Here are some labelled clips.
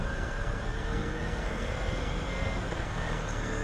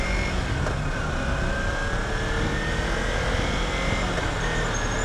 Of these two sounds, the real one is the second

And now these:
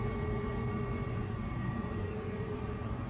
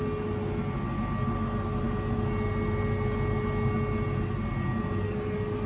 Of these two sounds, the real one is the second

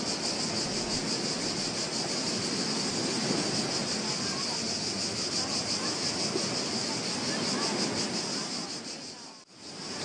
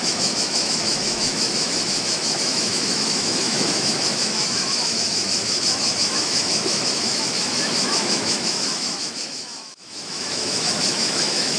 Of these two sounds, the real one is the first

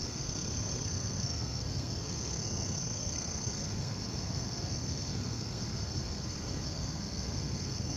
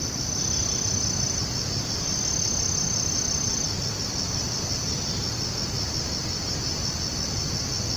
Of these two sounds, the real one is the second